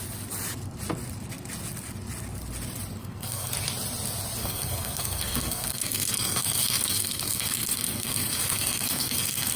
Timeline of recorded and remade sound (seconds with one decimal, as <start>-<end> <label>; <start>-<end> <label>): 0.0-3.0 recorded; 3.0-3.5 remade; 3.5-4.4 recorded; 4.4-9.6 remade